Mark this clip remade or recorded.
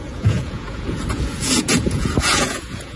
remade